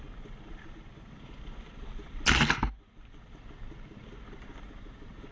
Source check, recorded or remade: recorded